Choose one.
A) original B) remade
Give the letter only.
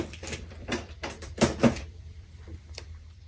B